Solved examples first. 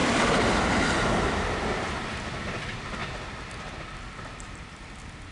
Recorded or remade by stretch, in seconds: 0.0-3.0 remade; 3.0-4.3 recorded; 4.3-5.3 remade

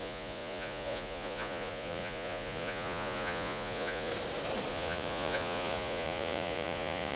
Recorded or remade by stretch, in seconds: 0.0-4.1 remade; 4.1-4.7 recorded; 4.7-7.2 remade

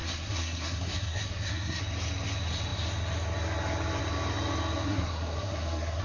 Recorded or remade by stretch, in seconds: 0.0-1.8 remade; 1.8-4.9 recorded; 4.9-6.0 remade

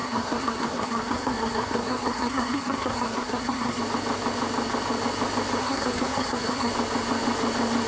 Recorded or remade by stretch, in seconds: 0.0-3.8 remade; 3.8-5.6 recorded; 5.6-6.7 remade; 6.7-7.9 recorded

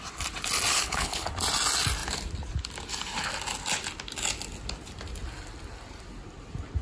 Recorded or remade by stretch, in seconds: 0.0-0.7 recorded; 0.7-1.3 remade; 1.3-6.8 recorded

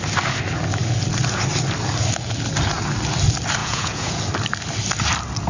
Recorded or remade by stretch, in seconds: 0.0-3.6 recorded; 3.6-4.2 remade; 4.2-5.5 recorded